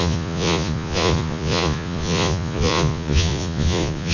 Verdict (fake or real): fake